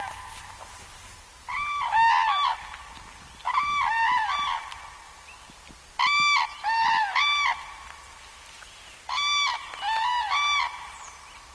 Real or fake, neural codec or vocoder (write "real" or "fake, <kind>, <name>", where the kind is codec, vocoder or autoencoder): real